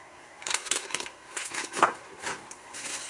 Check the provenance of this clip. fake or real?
fake